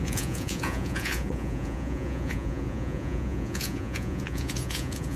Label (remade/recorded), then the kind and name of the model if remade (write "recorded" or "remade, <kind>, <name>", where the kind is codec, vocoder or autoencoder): remade, vocoder, Vocos